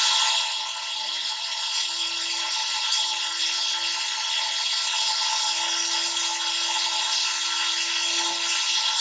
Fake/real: real